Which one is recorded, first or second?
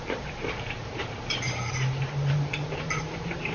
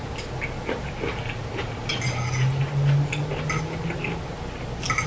second